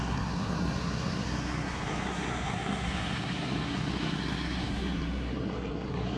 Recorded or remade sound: remade